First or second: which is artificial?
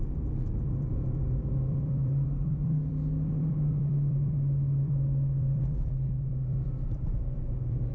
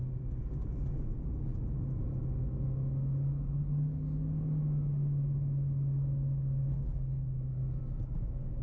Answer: first